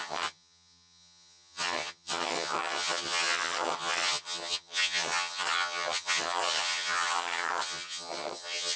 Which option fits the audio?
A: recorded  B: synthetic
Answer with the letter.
B